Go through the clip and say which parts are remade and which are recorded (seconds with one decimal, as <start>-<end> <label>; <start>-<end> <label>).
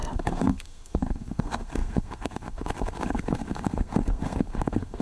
0.0-5.0 remade